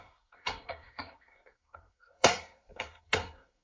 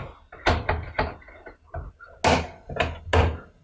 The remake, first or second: first